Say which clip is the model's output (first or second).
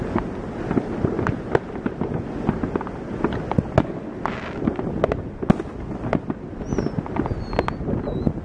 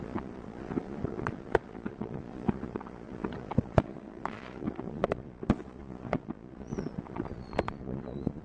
second